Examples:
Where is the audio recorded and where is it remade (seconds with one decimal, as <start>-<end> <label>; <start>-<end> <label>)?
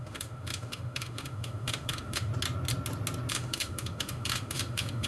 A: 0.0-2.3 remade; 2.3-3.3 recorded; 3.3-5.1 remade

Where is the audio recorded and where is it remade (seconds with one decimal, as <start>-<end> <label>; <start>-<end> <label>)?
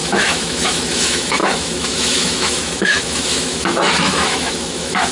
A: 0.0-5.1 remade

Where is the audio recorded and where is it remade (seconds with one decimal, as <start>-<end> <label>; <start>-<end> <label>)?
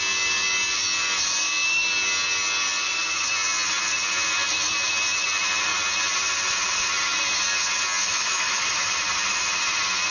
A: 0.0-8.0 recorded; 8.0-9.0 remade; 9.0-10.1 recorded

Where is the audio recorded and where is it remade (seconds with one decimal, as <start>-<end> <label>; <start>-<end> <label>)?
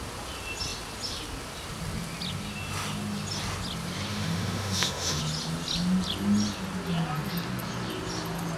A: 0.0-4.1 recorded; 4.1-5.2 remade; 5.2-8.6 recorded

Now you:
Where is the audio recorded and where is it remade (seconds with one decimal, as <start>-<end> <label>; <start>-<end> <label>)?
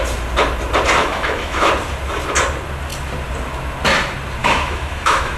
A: 0.0-1.0 recorded; 1.0-1.7 remade; 1.7-4.4 recorded; 4.4-5.4 remade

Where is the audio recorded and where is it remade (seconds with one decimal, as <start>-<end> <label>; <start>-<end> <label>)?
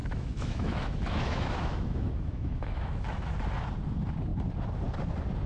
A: 0.0-3.3 remade; 3.3-5.5 recorded